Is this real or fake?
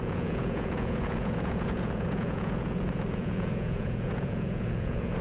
fake